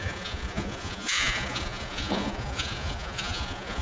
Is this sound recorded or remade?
remade